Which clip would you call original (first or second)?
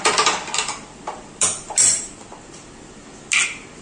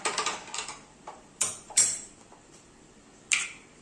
first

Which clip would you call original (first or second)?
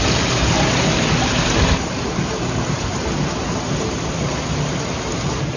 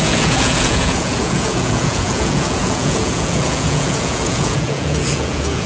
first